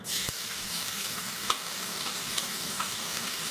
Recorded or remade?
remade